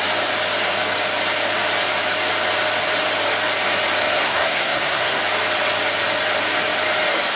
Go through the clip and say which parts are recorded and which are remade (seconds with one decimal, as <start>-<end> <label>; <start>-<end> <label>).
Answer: 0.0-4.0 recorded; 4.0-5.2 remade; 5.2-7.4 recorded